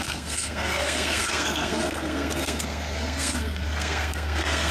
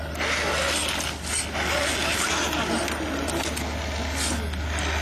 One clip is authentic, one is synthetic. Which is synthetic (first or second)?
first